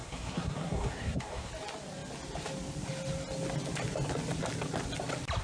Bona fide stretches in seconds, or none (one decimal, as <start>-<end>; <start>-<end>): 1.5-5.4